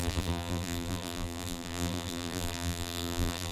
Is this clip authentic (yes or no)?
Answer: no